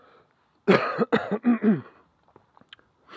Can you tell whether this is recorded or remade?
recorded